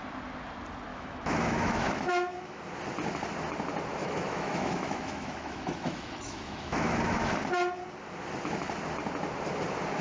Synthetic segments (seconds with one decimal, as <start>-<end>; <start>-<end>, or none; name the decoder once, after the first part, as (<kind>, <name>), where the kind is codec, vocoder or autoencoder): 0.9-2.6 (autoencoder, DAC-VAE); 4.0-7.3